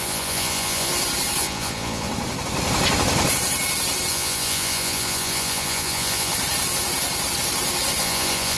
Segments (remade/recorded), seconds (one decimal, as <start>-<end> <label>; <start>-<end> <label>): 0.0-0.9 remade; 0.9-1.4 recorded; 1.4-2.1 remade; 2.1-4.1 recorded; 4.1-6.3 remade; 6.3-8.0 recorded; 8.0-8.6 remade